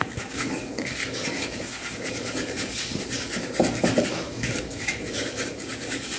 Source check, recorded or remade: remade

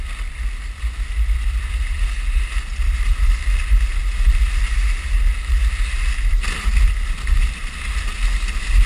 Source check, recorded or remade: recorded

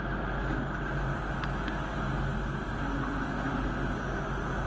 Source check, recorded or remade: recorded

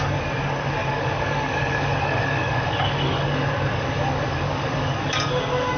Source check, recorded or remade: remade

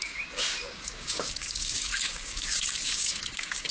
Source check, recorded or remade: remade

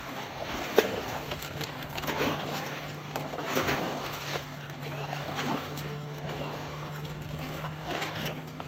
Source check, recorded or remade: remade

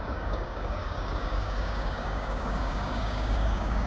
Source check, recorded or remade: remade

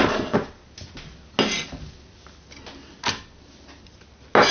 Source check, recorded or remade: recorded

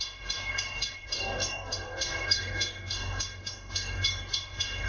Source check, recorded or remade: remade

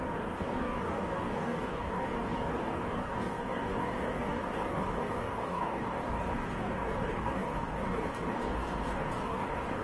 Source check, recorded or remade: remade